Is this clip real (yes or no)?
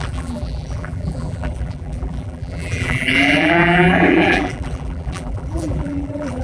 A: no